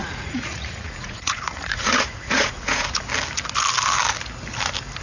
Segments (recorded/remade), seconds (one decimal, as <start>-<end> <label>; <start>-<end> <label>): 0.0-3.0 remade; 3.0-5.0 recorded